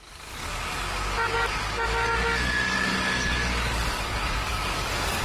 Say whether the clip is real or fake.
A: fake